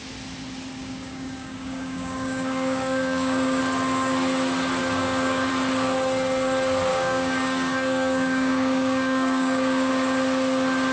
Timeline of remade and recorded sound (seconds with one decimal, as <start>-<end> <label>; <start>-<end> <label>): 0.0-0.8 recorded; 0.8-3.6 remade; 3.6-4.8 recorded; 4.8-5.5 remade; 5.5-6.9 recorded; 6.9-9.9 remade; 9.9-10.9 recorded